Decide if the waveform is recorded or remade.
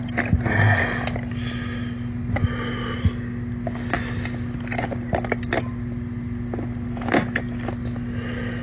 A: recorded